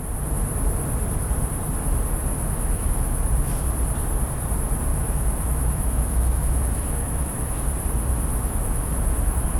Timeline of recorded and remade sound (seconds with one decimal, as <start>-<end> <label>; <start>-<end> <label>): 0.0-2.3 recorded; 2.3-3.6 remade; 3.6-4.9 recorded; 4.9-7.6 remade; 7.6-8.3 recorded; 8.3-9.6 remade